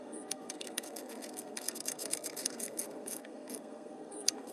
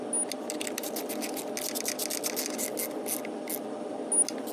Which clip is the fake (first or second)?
first